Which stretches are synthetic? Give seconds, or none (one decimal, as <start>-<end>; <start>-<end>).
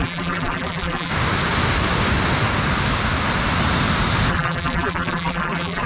0.0-1.1; 4.3-5.9